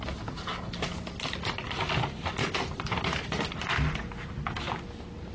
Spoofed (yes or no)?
no